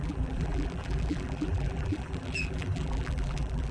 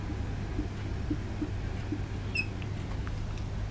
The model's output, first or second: first